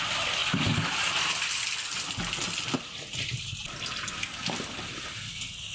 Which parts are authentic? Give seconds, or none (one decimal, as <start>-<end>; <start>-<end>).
0.0-5.7